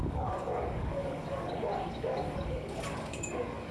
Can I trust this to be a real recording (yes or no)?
no